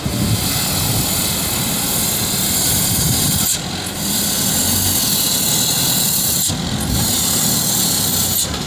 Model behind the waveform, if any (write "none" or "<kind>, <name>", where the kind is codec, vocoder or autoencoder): none